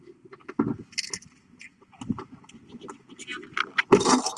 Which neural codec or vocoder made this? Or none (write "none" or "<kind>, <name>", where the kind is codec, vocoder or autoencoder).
none